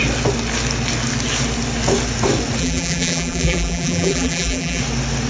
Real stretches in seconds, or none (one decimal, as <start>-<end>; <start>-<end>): 0.0-2.6; 4.8-5.3